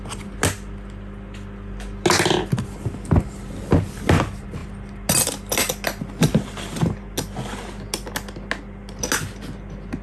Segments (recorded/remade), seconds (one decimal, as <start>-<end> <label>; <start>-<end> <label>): 0.0-10.0 recorded